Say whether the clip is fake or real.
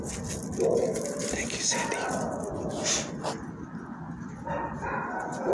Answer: real